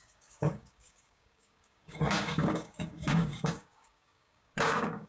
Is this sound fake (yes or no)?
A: yes